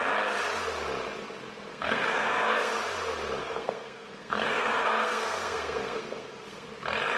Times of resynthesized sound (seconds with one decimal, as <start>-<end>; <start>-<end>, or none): 1.7-2.7; 3.4-6.7